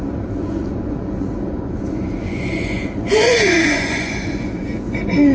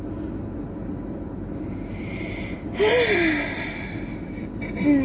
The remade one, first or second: first